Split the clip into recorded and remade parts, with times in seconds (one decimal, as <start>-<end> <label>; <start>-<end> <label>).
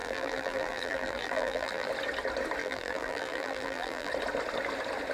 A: 0.0-1.9 remade; 1.9-2.6 recorded; 2.6-4.1 remade; 4.1-5.1 recorded